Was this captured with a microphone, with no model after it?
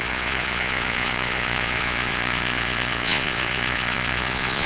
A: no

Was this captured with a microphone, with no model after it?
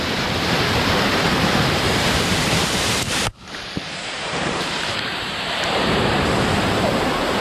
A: no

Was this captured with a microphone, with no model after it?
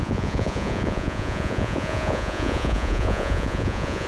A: no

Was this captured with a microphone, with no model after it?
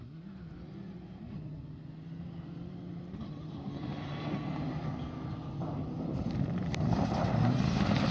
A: yes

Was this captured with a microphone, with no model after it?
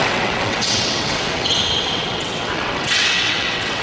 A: no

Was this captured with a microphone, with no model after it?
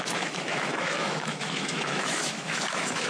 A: no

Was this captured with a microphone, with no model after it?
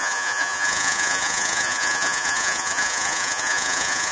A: no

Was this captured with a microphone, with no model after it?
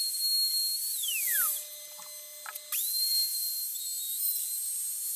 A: yes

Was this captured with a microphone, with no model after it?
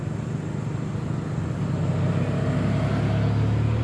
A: yes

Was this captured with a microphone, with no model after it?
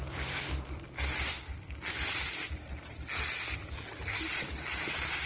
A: yes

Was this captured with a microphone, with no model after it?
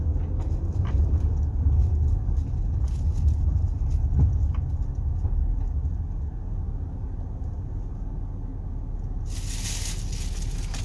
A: yes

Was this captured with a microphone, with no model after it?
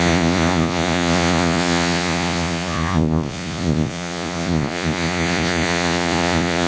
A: no